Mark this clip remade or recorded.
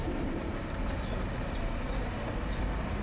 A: recorded